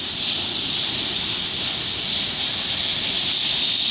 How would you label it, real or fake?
real